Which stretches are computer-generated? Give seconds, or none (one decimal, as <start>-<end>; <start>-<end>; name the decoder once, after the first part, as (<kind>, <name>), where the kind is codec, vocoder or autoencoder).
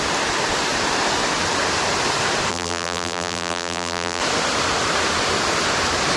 2.5-4.2 (vocoder, BigVGAN v2)